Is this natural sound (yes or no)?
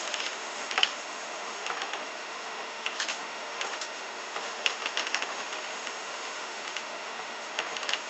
no